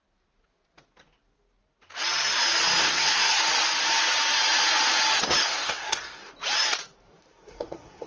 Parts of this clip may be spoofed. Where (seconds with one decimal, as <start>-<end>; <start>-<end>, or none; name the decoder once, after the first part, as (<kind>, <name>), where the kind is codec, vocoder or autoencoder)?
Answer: 2.8-3.4 (codec, SNAC); 5.4-6.3; 7.2-8.1